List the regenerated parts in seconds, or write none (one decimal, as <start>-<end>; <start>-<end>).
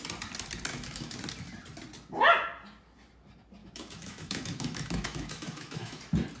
0.7-1.2; 3.6-6.0